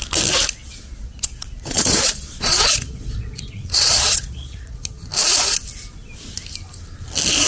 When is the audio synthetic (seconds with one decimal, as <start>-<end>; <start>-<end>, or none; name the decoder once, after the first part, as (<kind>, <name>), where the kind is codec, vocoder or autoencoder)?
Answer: 0.6-5.1 (vocoder, Vocos)